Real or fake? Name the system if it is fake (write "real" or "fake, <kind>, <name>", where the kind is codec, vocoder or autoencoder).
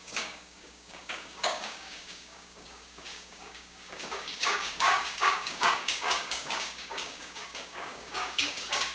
fake, codec, DAC